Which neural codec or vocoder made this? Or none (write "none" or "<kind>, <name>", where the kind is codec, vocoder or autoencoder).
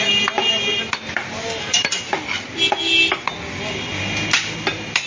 none